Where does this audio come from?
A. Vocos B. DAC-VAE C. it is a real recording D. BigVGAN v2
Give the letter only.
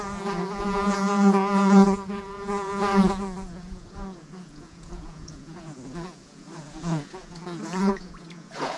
A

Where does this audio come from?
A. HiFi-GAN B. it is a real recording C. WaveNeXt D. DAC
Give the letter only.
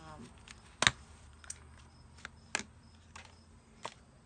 B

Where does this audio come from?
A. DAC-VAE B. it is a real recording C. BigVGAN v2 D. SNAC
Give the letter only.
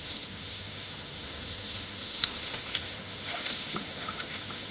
A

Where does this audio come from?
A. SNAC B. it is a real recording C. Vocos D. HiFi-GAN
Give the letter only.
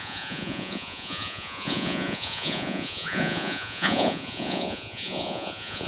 C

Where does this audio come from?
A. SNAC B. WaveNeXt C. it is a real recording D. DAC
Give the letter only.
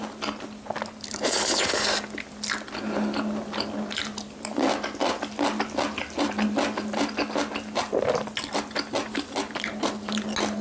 C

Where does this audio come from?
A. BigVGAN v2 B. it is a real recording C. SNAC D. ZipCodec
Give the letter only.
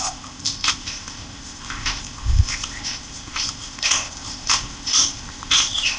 D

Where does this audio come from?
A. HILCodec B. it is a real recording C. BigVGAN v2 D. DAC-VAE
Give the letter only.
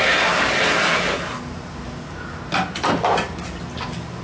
B